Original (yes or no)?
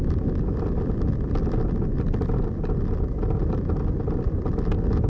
yes